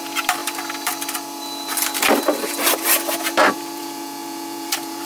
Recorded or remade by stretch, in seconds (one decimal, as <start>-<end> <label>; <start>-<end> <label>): 0.0-5.1 remade